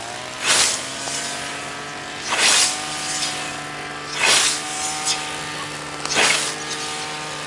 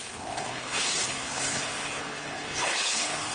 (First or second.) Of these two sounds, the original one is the first